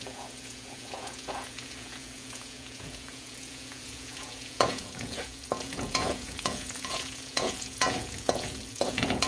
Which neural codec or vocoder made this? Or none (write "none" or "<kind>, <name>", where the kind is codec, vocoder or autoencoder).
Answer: vocoder, Vocos